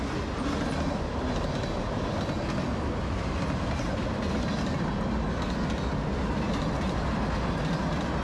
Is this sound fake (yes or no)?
no